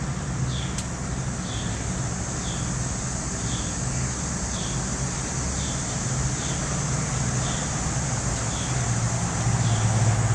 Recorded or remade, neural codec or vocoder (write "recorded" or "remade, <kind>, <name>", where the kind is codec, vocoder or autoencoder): recorded